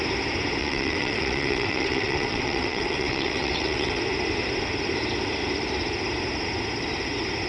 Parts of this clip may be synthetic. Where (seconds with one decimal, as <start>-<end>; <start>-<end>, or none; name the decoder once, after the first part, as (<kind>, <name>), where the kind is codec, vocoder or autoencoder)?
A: 0.6-4.0 (vocoder, WaveNeXt)